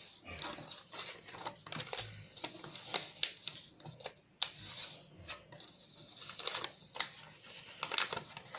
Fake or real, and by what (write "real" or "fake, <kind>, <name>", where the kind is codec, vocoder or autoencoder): real